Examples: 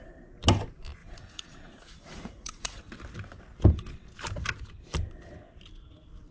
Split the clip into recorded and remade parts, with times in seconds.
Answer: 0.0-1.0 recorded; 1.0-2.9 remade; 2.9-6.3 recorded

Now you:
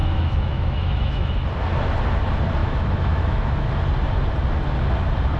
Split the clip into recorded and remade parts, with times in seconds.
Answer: 0.0-1.3 remade; 1.3-2.6 recorded; 2.6-3.7 remade; 3.7-5.4 recorded

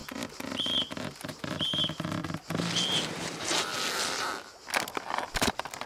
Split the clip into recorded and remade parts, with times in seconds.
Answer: 0.0-0.6 recorded; 0.6-2.2 remade; 2.2-3.2 recorded; 3.2-3.7 remade; 3.7-5.4 recorded; 5.4-5.9 remade

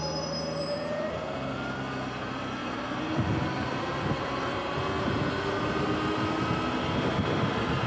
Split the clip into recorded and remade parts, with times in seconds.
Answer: 0.0-2.6 recorded; 2.6-4.7 remade; 4.7-7.9 recorded

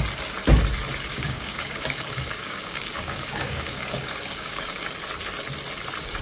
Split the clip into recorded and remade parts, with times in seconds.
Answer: 0.0-1.1 recorded; 1.1-4.8 remade; 4.8-6.2 recorded